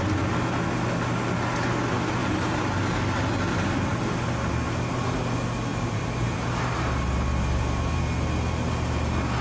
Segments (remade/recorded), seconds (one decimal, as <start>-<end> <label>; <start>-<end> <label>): 0.0-2.2 recorded; 2.2-2.7 remade; 2.7-5.7 recorded; 5.7-8.0 remade; 8.0-9.4 recorded